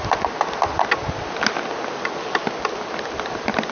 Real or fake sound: real